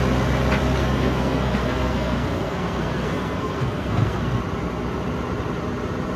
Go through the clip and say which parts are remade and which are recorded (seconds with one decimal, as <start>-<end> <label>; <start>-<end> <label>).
0.0-0.8 recorded; 0.8-4.4 remade; 4.4-6.2 recorded